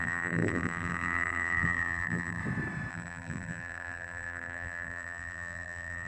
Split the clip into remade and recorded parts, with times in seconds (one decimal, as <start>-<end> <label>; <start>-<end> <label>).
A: 0.0-2.4 remade; 2.4-2.9 recorded; 2.9-6.1 remade